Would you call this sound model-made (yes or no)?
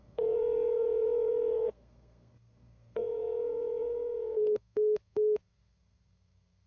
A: yes